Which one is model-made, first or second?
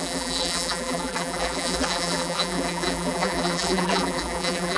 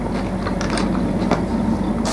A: first